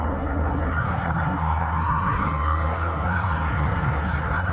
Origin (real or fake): fake